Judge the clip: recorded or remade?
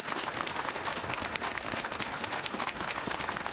remade